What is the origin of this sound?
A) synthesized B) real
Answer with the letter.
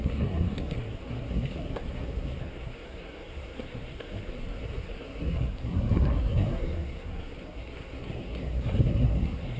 A